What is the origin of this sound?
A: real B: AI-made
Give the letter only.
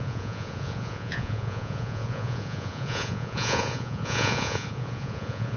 B